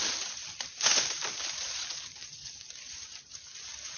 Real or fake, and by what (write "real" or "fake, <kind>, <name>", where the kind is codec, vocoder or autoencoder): real